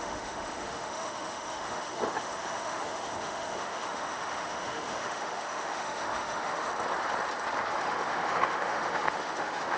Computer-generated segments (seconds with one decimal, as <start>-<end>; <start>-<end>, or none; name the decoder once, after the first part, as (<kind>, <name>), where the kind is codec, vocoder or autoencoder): 0.0-6.7 (autoencoder, DAC-VAE); 7.7-9.8

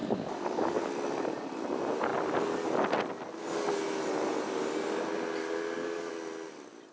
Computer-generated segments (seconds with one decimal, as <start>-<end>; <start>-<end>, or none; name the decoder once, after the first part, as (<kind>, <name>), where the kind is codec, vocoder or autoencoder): 0.0-0.9 (codec, DAC); 5.4-6.1

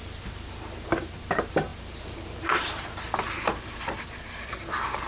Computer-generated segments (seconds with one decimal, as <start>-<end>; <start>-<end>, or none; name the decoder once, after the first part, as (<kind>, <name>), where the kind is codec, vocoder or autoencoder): none

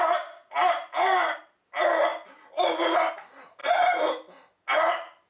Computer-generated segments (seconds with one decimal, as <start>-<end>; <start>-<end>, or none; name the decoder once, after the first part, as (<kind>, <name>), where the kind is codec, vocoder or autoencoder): none

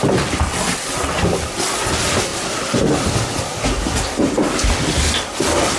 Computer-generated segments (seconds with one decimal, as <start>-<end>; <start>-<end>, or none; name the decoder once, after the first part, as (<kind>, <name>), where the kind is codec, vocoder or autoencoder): none

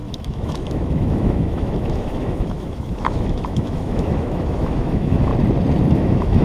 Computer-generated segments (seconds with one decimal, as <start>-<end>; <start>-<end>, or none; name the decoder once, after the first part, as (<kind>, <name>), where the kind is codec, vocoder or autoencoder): 0.0-5.3 (autoencoder, DAC-VAE); 5.9-6.4

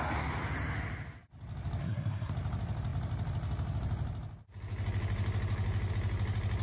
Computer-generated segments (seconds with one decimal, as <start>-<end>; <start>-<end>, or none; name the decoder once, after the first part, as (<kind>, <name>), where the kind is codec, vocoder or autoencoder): 1.8-2.3 (codec, SNAC)

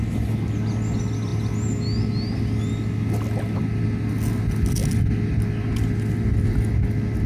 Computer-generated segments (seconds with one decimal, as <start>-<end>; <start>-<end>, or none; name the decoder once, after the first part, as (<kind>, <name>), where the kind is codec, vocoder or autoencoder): none